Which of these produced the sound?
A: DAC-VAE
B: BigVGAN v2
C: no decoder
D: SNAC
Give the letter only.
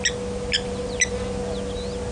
C